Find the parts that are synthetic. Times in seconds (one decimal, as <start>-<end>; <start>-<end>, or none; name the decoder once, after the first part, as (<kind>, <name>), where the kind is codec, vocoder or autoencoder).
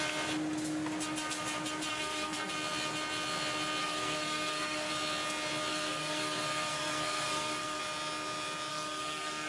1.9-2.5 (codec, SNAC); 3.8-4.9; 5.7-7.8; 8.7-9.5